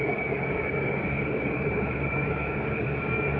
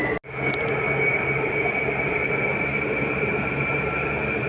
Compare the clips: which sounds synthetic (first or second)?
first